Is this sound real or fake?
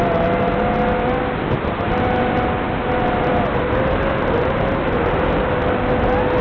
real